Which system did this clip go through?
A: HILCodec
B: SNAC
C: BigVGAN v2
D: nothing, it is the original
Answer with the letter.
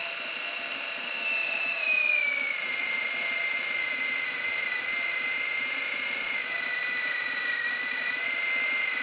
C